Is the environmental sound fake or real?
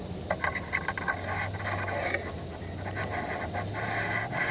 real